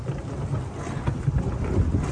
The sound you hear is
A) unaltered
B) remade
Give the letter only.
A